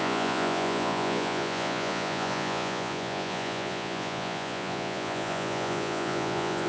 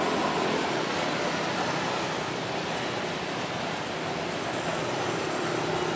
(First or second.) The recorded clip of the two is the second